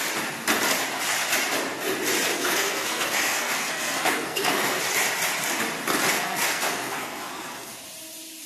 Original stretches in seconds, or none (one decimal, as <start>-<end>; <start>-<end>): 0.0-2.3; 4.8-6.1; 7.7-8.5